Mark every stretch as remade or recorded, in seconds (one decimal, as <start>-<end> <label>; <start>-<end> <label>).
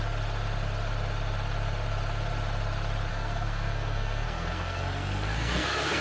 0.0-3.1 recorded; 3.1-6.0 remade